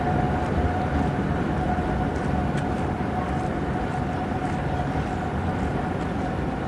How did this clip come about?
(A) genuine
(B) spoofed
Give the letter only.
A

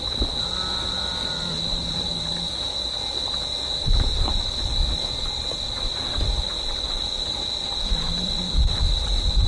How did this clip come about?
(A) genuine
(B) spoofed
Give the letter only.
A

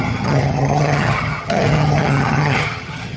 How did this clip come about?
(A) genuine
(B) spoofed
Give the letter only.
B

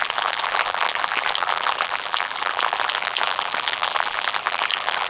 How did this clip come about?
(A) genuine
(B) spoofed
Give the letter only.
B